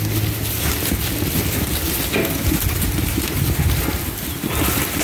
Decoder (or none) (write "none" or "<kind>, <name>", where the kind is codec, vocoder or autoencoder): none